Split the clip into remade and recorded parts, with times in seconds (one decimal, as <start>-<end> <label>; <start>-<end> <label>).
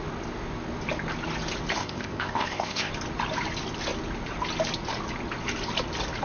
0.0-1.8 recorded; 1.8-2.9 remade; 2.9-6.2 recorded